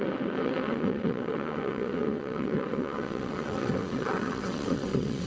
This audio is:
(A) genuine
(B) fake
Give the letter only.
B